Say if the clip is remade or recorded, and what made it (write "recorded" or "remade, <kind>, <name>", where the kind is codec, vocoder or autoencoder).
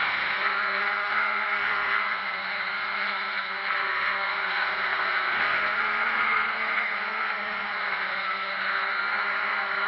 remade, codec, SNAC